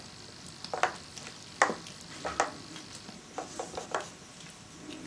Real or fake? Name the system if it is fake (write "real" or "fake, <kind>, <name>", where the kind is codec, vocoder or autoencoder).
real